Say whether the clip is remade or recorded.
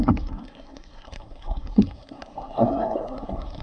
remade